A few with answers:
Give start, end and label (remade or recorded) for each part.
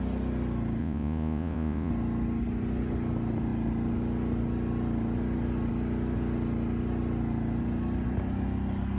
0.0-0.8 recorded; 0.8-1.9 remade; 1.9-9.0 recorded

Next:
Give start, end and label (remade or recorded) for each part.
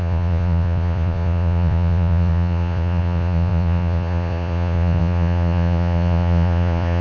0.0-7.0 remade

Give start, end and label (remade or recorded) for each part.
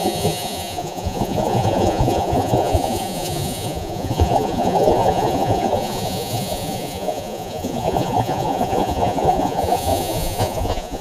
0.0-11.0 remade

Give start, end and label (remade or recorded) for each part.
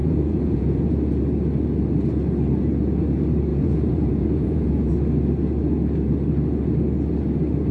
0.0-0.9 remade; 0.9-3.5 recorded; 3.5-4.9 remade; 4.9-7.7 recorded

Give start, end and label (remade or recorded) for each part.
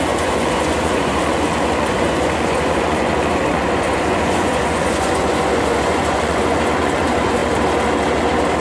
0.0-7.4 remade; 7.4-8.6 recorded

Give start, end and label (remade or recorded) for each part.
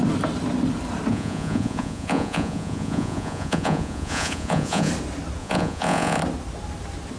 0.0-1.1 recorded; 1.1-4.9 remade; 4.9-5.4 recorded; 5.4-6.2 remade; 6.2-7.2 recorded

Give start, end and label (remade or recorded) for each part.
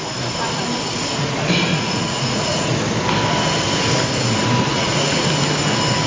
0.0-1.7 recorded; 1.7-2.6 remade; 2.6-4.7 recorded; 4.7-5.2 remade; 5.2-6.1 recorded